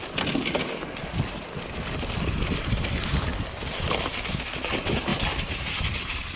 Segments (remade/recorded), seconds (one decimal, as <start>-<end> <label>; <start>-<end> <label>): 0.0-6.4 recorded